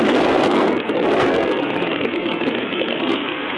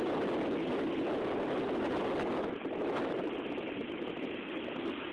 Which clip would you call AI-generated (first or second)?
first